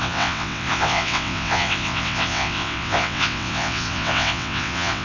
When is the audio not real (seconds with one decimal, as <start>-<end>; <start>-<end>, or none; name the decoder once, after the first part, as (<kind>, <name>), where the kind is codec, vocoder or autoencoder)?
0.0-5.0 (vocoder, WaveNeXt)